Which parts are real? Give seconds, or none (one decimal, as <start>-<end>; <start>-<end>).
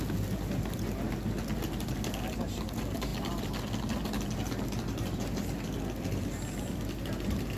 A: 0.0-7.6